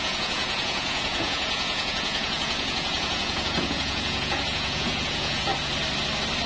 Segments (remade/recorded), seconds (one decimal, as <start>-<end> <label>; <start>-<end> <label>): 0.0-5.5 remade; 5.5-6.5 recorded

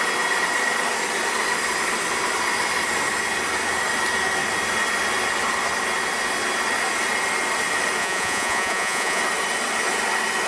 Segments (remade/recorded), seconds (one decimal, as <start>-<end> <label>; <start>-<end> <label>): 0.0-8.0 recorded; 8.0-9.2 remade; 9.2-10.5 recorded

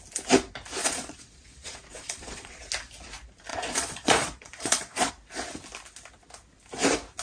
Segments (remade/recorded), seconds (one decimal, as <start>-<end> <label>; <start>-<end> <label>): 0.0-0.8 recorded; 0.8-2.7 remade; 2.7-3.5 recorded; 3.5-5.1 remade; 5.1-7.2 recorded

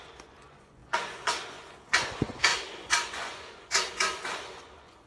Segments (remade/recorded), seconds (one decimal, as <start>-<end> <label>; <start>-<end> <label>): 0.0-5.1 remade

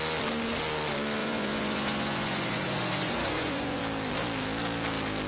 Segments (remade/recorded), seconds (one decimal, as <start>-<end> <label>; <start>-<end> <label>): 0.0-1.2 recorded; 1.2-3.8 remade; 3.8-5.3 recorded

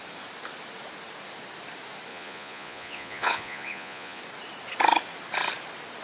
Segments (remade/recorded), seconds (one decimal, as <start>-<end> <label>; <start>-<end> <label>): 0.0-2.1 recorded; 2.1-4.2 remade; 4.2-6.0 recorded

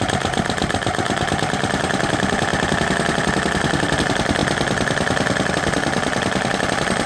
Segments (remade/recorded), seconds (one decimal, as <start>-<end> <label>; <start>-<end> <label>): 0.0-7.1 recorded

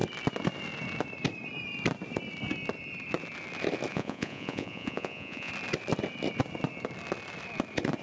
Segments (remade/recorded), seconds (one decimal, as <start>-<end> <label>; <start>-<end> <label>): 0.0-3.9 recorded; 3.9-5.5 remade; 5.5-8.0 recorded